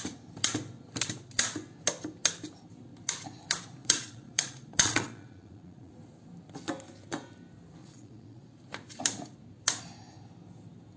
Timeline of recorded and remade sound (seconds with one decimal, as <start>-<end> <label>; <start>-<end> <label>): 0.0-3.8 recorded; 3.8-5.9 remade; 5.9-7.8 recorded; 7.8-8.5 remade; 8.5-11.0 recorded